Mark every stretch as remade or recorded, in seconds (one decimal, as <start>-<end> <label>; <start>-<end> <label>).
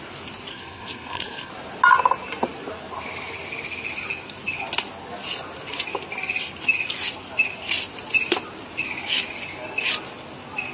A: 0.0-0.5 recorded; 0.5-1.5 remade; 1.5-10.7 recorded